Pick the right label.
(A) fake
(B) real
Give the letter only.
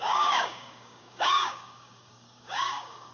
A